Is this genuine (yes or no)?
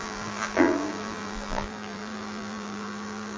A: no